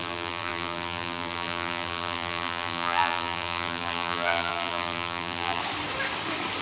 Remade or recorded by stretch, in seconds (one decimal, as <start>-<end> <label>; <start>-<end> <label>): 0.0-5.6 remade; 5.6-6.6 recorded